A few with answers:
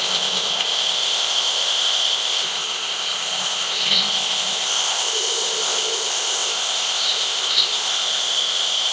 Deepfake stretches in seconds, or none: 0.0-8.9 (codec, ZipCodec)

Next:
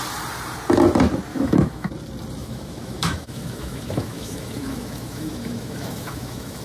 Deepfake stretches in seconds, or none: 1.3-1.9 (autoencoder, DAC-VAE); 2.4-6.6

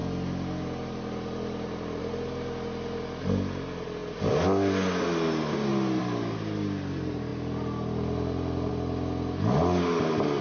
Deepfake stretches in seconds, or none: none

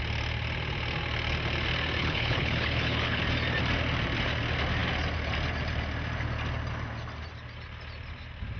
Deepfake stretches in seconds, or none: 2.0-3.2 (codec, HILCodec)

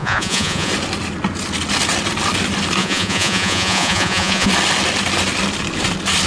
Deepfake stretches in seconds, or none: 0.0-0.7 (vocoder, Vocos); 2.8-4.5

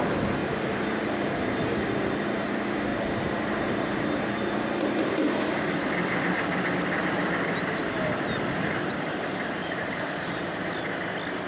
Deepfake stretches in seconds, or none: 0.4-1.6 (vocoder, BigVGAN v2); 2.9-4.2; 9.6-10.5